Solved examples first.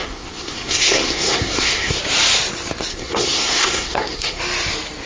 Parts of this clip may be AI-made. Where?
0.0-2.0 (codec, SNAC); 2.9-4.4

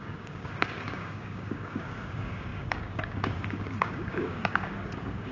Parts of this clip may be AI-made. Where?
0.0-5.3 (codec, DAC)

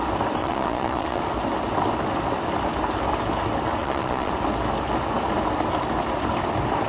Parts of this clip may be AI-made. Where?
0.4-1.2 (vocoder, Vocos); 3.8-4.3

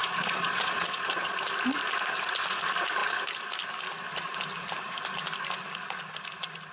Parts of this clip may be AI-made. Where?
0.0-1.4 (vocoder, Vocos)

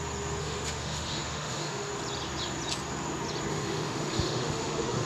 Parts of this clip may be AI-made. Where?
0.4-1.9 (autoencoder, DAC-VAE); 3.5-5.1

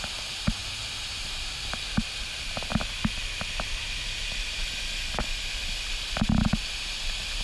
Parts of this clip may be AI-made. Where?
0.6-2.7 (vocoder, BigVGAN v2)

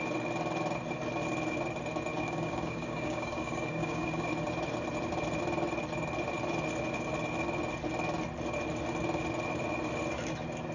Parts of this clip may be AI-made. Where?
2.1-4.3 (codec, DAC)

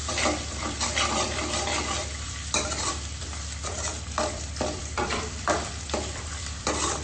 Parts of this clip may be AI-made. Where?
0.0-7.0 (vocoder, BigVGAN v2)